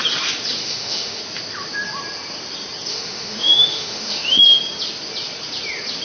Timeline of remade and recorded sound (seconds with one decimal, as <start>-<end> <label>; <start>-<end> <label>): 0.0-0.6 recorded; 0.6-1.2 remade; 1.2-2.9 recorded; 2.9-4.4 remade; 4.4-6.0 recorded